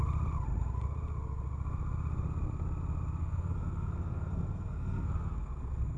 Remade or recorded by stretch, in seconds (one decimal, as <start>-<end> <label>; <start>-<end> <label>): 0.0-3.2 recorded; 3.2-6.0 remade